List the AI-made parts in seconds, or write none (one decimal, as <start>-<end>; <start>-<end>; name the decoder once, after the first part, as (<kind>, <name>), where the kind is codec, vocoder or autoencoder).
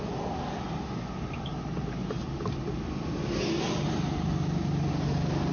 none